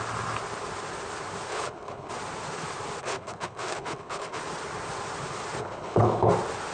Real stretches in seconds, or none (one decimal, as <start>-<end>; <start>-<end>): 0.0-1.5; 2.1-3.0; 4.4-5.6; 6.3-6.7